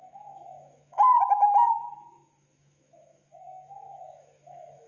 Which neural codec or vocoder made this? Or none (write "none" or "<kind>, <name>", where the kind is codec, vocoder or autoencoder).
autoencoder, DAC-VAE